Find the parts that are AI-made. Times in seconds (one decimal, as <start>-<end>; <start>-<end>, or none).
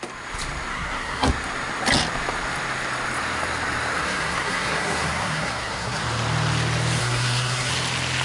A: 0.7-1.3; 4.0-6.0; 7.0-7.7